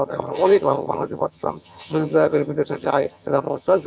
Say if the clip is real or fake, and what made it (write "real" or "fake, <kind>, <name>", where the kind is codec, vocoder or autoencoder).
fake, vocoder, HiFi-GAN